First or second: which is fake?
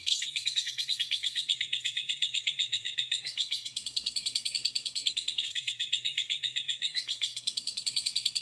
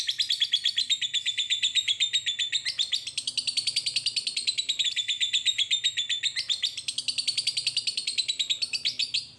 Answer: first